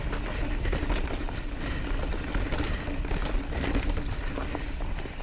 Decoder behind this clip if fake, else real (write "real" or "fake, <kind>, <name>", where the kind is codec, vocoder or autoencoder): real